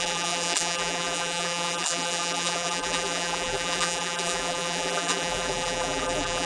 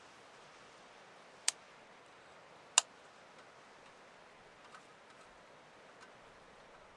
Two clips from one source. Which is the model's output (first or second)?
first